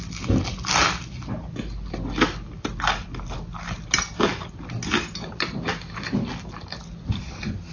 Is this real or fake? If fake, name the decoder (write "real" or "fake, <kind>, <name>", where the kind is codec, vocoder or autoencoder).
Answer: real